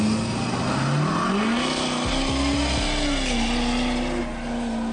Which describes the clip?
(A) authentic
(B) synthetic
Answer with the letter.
A